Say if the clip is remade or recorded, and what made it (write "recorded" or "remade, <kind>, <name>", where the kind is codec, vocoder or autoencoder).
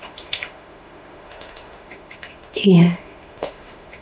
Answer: remade, autoencoder, DAC-VAE